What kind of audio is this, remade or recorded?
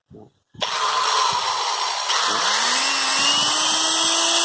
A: recorded